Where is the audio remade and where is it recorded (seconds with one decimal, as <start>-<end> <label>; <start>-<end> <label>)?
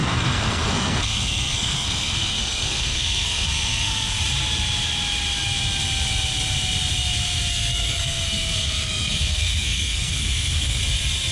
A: 0.0-4.2 remade; 4.2-7.5 recorded; 7.5-10.8 remade; 10.8-11.3 recorded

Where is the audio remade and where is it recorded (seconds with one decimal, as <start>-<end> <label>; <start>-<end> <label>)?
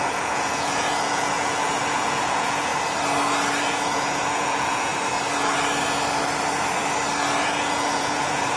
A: 0.0-2.7 remade; 2.7-3.6 recorded; 3.6-4.9 remade; 4.9-7.4 recorded; 7.4-8.6 remade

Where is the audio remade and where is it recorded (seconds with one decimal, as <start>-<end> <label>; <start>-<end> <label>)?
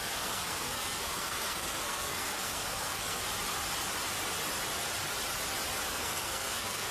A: 0.0-3.2 remade; 3.2-5.9 recorded; 5.9-6.9 remade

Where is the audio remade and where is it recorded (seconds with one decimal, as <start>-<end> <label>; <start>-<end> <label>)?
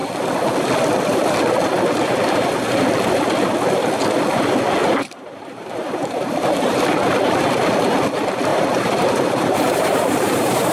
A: 0.0-4.8 recorded; 4.8-6.4 remade; 6.4-8.5 recorded; 8.5-10.7 remade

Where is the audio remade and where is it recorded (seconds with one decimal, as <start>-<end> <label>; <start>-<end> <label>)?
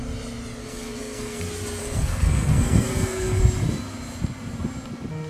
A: 0.0-0.6 recorded; 0.6-1.4 remade; 1.4-1.8 recorded; 1.8-3.4 remade; 3.4-5.3 recorded